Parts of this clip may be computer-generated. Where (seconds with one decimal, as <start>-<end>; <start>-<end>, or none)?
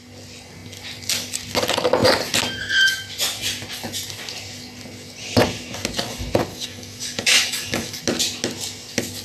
6.5-8.0